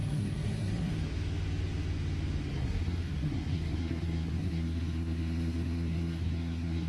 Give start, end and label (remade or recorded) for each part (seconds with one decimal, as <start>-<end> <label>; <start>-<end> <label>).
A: 0.0-0.9 remade; 0.9-2.5 recorded; 2.5-6.9 remade

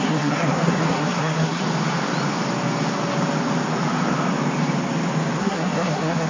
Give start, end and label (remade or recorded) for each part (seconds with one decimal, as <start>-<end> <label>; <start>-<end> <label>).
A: 0.0-1.6 remade; 1.6-5.4 recorded; 5.4-6.3 remade

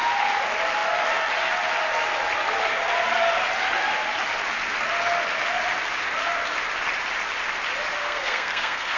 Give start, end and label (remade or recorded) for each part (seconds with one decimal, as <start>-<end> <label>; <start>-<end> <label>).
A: 0.0-8.0 recorded; 8.0-9.0 remade